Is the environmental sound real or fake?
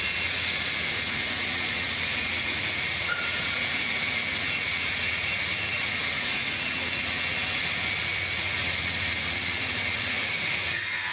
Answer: fake